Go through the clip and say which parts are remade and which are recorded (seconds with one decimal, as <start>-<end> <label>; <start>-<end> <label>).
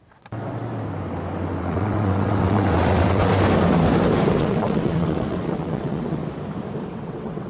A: 0.0-0.6 remade; 0.6-1.6 recorded; 1.6-3.3 remade; 3.3-4.4 recorded; 4.4-6.2 remade; 6.2-6.8 recorded; 6.8-7.5 remade